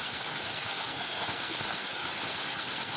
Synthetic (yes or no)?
yes